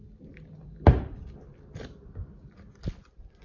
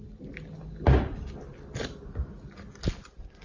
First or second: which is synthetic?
first